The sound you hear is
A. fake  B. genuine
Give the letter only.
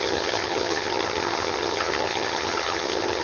A